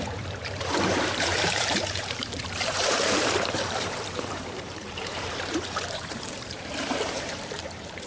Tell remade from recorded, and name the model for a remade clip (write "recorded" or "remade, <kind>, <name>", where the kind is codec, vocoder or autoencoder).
remade, vocoder, BigVGAN v2